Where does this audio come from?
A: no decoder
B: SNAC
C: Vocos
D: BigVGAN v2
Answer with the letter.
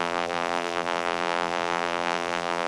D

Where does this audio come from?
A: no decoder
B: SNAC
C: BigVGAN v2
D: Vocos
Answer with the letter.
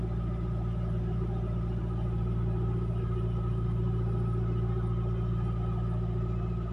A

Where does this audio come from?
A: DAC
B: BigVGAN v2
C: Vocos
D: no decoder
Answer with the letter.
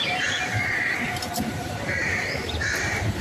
B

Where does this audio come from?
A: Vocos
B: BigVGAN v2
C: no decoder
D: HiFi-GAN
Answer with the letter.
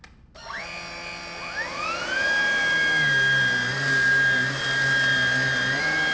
C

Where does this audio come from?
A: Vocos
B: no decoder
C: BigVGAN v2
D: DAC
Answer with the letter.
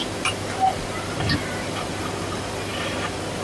C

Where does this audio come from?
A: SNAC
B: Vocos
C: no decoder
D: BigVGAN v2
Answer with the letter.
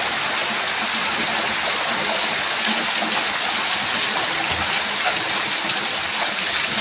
C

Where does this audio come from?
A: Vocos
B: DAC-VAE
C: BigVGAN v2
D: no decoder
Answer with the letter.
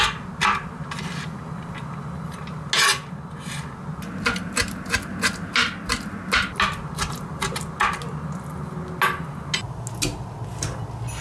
D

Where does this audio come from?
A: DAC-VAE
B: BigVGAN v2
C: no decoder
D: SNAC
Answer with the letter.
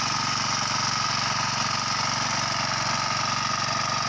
C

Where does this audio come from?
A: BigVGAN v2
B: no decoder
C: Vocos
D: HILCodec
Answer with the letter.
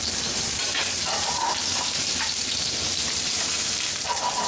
A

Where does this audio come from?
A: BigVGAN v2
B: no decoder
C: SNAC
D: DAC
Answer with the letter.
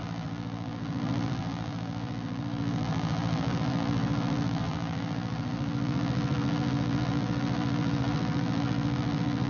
A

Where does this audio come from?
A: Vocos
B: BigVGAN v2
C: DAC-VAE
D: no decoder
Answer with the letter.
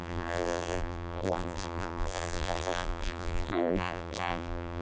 B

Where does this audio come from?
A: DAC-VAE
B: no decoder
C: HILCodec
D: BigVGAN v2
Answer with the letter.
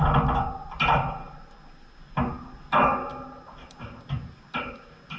B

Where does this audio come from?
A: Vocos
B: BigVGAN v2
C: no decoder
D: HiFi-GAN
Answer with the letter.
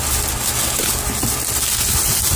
C